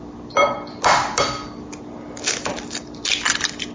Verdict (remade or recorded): recorded